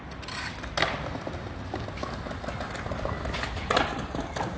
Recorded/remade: recorded